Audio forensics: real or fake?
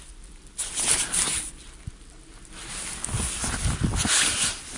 real